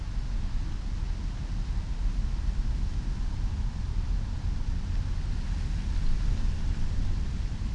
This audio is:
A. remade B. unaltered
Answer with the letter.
B